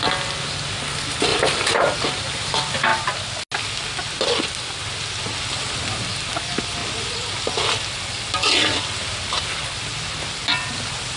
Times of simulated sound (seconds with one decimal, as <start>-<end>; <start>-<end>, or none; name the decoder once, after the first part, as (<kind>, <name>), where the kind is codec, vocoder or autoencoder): 1.3-2.5 (vocoder, BigVGAN v2)

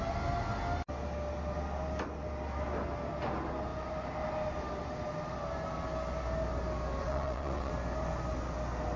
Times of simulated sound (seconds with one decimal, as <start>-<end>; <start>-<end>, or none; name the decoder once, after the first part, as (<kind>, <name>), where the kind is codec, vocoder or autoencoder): 7.0-7.7 (vocoder, WaveNeXt)

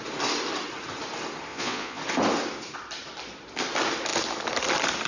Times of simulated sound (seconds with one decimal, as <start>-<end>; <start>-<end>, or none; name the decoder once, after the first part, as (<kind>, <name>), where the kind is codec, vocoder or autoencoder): 1.5-2.0 (vocoder, Vocos)